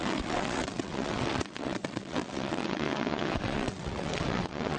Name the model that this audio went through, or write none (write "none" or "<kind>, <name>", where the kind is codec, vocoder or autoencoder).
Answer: vocoder, WaveNeXt